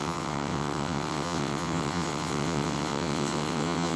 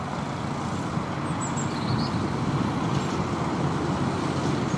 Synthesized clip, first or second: first